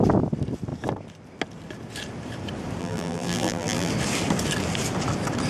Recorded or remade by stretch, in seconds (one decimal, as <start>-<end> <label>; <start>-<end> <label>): 0.0-2.8 recorded; 2.8-3.9 remade; 3.9-5.5 recorded